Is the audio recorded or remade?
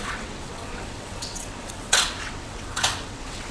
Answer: remade